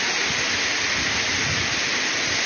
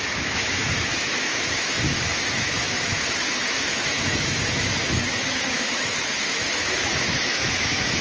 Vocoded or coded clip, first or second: second